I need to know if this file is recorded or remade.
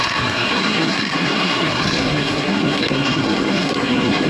remade